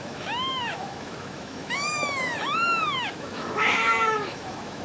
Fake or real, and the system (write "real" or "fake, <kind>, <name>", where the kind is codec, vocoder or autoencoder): fake, autoencoder, DAC-VAE